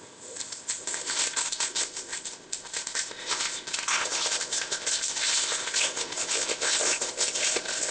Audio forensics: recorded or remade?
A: remade